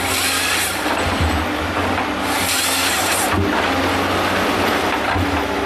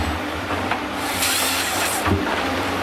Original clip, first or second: first